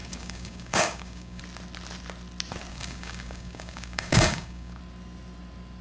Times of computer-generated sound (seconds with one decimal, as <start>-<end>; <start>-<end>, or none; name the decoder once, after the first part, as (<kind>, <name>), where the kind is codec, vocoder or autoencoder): 0.0-1.4 (codec, DAC); 2.7-4.8